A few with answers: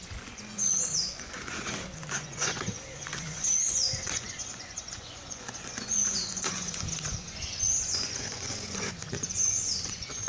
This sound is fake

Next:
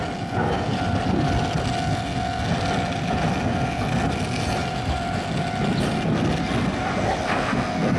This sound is real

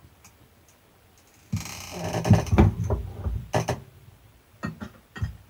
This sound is real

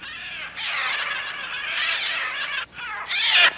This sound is real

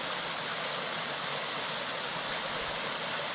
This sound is real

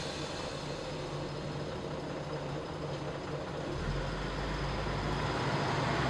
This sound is real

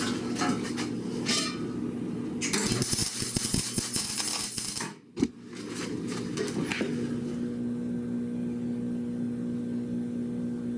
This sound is real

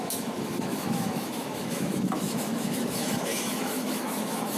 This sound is fake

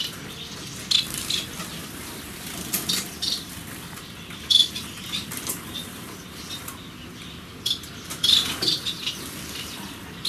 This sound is real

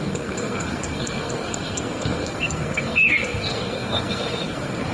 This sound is fake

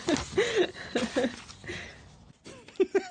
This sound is real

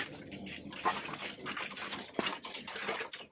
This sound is real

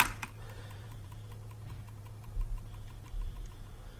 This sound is fake